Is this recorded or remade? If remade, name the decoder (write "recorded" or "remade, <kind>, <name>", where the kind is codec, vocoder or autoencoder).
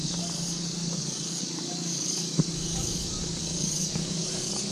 remade, codec, DAC